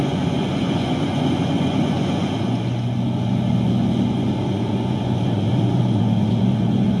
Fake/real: fake